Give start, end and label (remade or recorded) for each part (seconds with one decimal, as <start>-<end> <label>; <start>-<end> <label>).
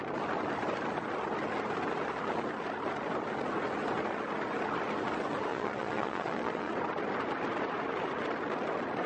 0.0-5.5 recorded; 5.5-6.7 remade; 6.7-9.1 recorded